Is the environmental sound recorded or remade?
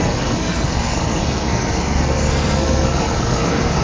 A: remade